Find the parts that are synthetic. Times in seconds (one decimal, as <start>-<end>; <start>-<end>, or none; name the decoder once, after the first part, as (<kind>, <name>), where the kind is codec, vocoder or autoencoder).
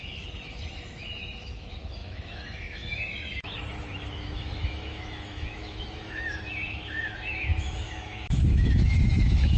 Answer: 0.0-9.6 (autoencoder, DAC-VAE)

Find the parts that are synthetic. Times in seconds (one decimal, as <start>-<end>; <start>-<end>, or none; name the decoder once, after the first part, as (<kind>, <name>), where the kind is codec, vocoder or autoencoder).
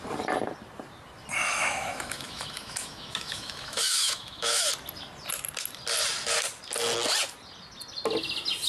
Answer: 1.4-4.7 (autoencoder, DAC-VAE)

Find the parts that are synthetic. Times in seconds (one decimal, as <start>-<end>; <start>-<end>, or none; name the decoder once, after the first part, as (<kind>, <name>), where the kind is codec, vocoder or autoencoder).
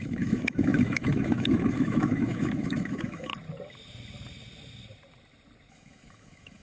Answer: 0.0-3.3 (autoencoder, DAC-VAE); 5.7-6.6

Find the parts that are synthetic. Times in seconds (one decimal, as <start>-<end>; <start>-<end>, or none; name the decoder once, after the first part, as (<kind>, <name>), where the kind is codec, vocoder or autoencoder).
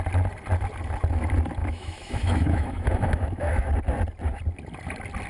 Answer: 1.6-3.7 (autoencoder, DAC-VAE)